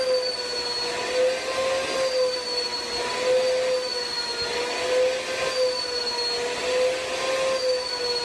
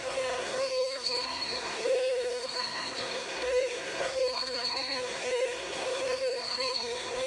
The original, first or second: first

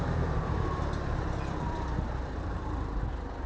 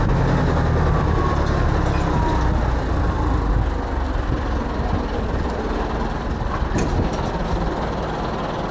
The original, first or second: second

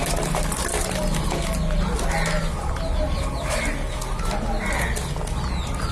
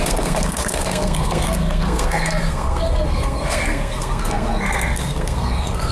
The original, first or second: first